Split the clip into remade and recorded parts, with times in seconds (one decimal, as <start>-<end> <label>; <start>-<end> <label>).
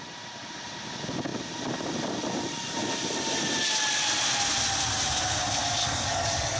0.0-5.8 recorded; 5.8-6.6 remade